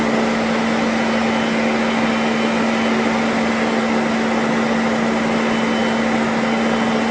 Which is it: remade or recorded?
recorded